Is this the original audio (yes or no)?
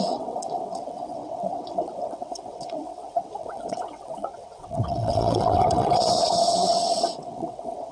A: no